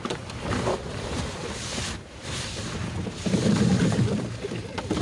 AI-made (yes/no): yes